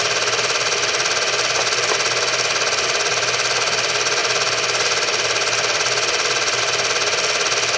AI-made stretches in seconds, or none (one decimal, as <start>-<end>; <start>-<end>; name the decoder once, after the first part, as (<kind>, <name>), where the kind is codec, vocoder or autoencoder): none